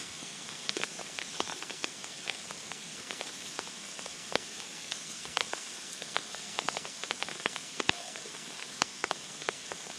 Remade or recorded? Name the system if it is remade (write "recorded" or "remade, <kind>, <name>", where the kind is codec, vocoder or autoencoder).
remade, codec, SNAC